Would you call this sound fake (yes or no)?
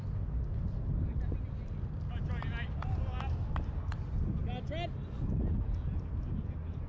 no